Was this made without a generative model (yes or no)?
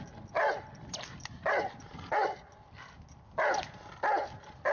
yes